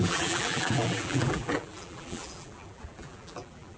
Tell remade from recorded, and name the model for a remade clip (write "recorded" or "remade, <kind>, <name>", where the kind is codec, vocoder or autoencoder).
remade, vocoder, BigVGAN v2